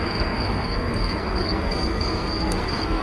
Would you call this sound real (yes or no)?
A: no